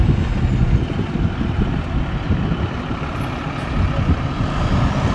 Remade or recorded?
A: recorded